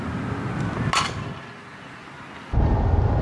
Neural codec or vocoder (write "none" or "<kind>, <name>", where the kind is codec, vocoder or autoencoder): none